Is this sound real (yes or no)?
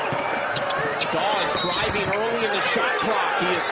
yes